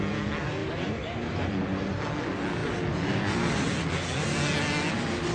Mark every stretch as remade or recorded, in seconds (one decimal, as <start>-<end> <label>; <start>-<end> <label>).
0.0-0.6 recorded; 0.6-2.0 remade; 2.0-5.3 recorded